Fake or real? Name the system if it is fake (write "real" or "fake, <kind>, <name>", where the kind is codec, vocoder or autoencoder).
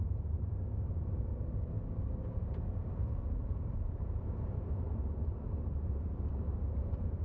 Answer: fake, vocoder, BigVGAN v2